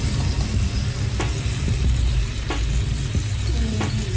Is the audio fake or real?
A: real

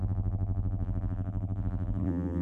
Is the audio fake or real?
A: fake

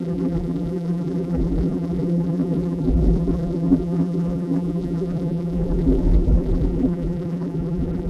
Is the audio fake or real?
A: fake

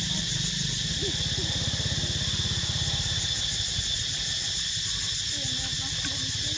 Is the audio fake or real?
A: real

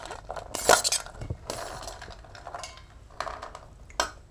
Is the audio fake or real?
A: real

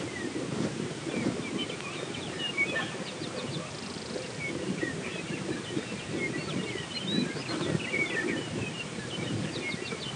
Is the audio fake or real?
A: fake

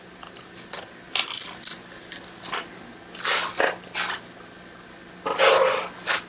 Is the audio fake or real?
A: real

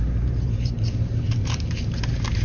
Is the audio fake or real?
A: fake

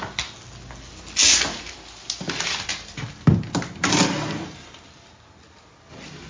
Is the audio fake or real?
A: real